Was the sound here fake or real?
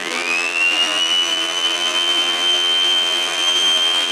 fake